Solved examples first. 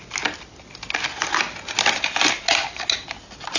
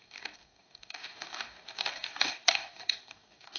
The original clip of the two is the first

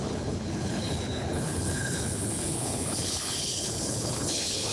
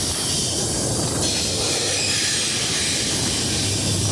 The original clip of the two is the second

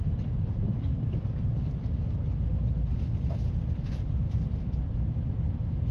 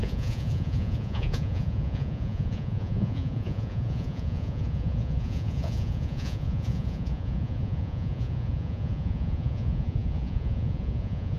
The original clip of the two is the first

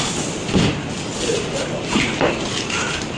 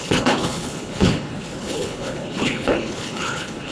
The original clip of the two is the first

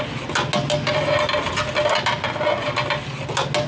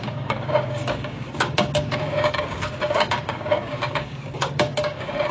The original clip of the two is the first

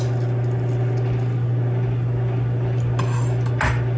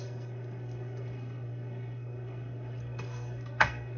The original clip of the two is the first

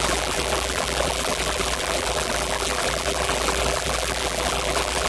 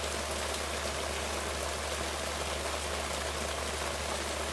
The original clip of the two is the second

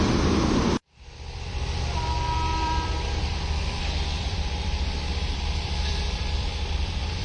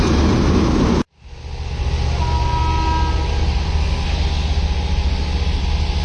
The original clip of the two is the second